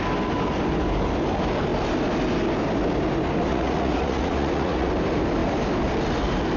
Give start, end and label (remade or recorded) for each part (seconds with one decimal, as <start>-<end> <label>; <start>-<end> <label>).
0.0-3.5 recorded; 3.5-4.9 remade; 4.9-6.6 recorded